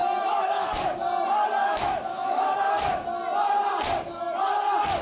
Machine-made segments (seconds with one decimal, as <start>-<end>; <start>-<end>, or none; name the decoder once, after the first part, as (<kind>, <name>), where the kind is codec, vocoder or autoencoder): 0.0-0.8 (autoencoder, DAC-VAE); 1.6-2.7